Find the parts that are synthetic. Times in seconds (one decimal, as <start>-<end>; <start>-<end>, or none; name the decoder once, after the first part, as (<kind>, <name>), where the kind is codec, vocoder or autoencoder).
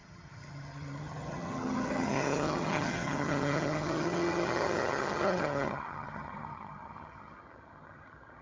0.0-8.4 (vocoder, HiFi-GAN)